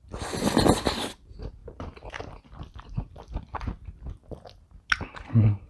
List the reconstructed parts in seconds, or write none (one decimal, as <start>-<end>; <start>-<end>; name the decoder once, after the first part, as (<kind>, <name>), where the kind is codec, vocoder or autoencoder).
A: none